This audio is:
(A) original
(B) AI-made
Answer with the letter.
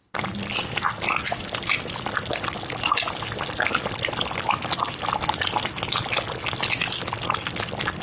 A